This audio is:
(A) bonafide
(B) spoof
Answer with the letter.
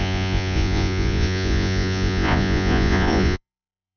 B